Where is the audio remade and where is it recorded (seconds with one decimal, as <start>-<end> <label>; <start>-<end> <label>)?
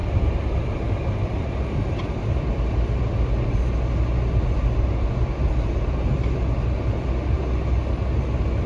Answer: 0.0-3.3 remade; 3.3-8.7 recorded